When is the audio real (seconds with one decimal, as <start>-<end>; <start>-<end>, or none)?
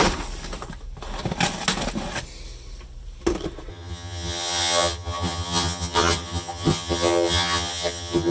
0.0-3.7